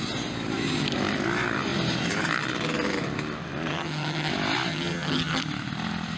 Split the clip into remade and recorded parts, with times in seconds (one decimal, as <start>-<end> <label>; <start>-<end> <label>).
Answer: 0.0-3.7 recorded; 3.7-4.3 remade; 4.3-4.7 recorded; 4.7-5.4 remade; 5.4-6.2 recorded